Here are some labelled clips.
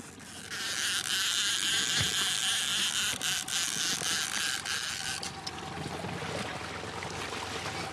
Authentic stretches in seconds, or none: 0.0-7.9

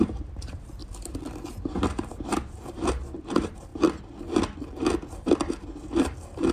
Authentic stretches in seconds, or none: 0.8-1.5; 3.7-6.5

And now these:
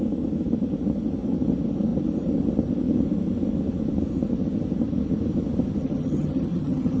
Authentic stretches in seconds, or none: 0.0-5.8

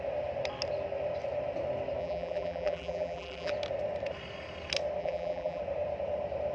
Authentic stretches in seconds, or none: 0.0-2.0; 3.5-5.0; 5.6-6.5

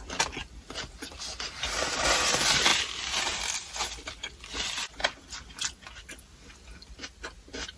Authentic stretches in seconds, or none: 0.0-7.8

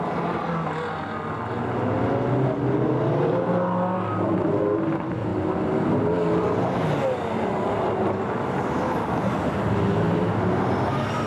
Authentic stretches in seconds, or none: 0.0-11.3

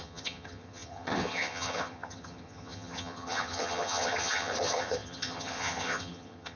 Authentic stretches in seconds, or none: none

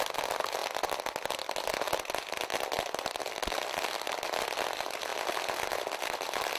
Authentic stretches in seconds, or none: 0.0-6.6